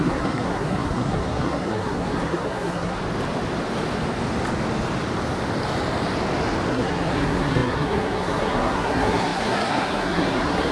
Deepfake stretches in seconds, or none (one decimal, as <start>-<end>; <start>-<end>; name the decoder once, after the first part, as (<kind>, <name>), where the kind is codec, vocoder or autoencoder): 0.0-3.0 (codec, SNAC); 6.7-10.7